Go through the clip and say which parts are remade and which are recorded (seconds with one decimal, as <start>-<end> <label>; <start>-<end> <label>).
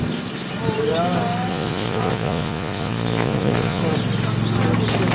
0.0-1.5 recorded; 1.5-3.8 remade; 3.8-5.1 recorded